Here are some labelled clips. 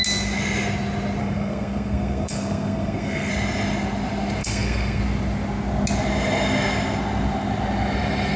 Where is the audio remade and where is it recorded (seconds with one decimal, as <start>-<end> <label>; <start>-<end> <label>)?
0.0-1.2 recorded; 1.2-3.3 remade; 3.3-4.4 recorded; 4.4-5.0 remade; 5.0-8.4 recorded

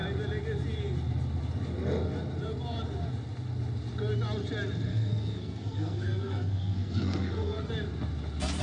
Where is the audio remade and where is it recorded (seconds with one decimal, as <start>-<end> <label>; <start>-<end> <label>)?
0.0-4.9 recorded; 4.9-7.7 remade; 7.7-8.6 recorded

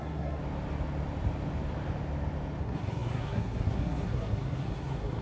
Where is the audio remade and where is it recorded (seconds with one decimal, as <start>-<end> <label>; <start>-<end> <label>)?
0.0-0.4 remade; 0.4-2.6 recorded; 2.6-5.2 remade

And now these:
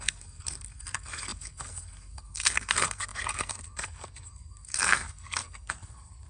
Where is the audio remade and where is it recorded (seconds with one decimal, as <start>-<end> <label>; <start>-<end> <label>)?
0.0-6.3 remade

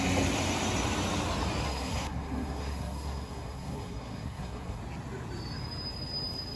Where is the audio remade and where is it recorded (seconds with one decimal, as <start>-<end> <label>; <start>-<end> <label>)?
0.0-1.6 recorded; 1.6-4.8 remade; 4.8-6.6 recorded

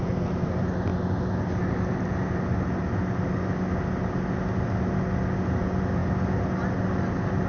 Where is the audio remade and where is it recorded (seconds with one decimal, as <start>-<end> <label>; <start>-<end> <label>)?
0.0-7.5 recorded

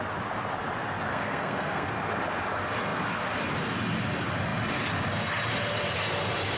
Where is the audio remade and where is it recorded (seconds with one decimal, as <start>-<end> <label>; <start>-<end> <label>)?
0.0-1.1 recorded; 1.1-1.9 remade; 1.9-6.6 recorded